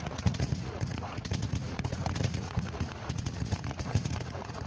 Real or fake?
fake